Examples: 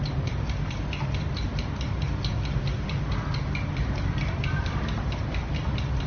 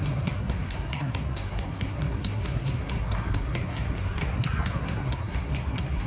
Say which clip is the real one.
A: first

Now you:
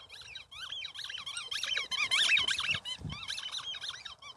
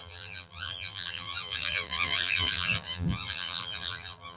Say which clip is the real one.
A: first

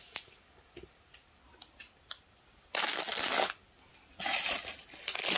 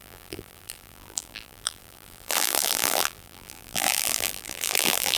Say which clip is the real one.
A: first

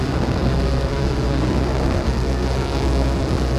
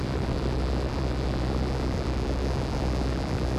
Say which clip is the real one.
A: second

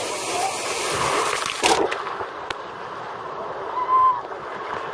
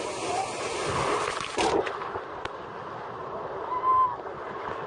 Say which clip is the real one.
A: second